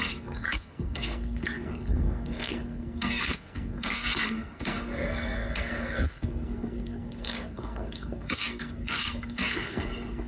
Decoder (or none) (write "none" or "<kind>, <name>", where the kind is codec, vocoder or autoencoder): codec, SNAC